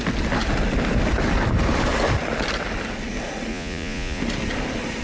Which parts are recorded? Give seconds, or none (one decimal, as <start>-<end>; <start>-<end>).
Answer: 0.0-3.5; 4.2-5.0